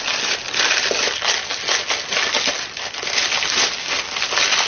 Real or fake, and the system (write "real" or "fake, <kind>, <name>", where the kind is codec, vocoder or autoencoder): real